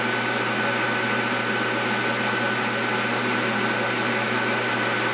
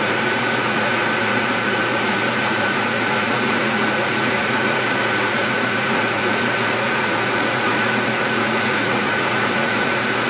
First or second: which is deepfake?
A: second